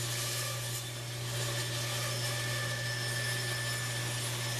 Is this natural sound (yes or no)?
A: yes